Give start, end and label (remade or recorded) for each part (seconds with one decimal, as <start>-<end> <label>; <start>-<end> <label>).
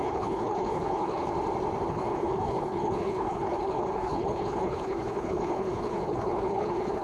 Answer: 0.0-1.3 remade; 1.3-1.9 recorded; 1.9-7.0 remade